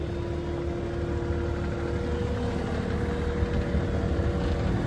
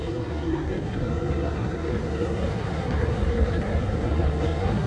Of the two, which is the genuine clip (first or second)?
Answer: first